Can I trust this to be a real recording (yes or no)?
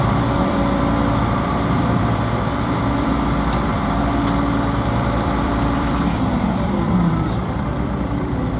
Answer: no